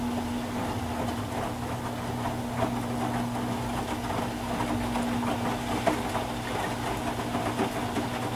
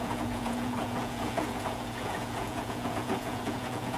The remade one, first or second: second